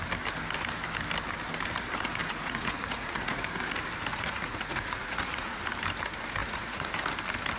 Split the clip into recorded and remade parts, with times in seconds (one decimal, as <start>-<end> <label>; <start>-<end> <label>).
0.0-2.2 recorded; 2.2-3.5 remade; 3.5-4.1 recorded; 4.1-5.6 remade; 5.6-6.4 recorded; 6.4-6.9 remade; 6.9-7.6 recorded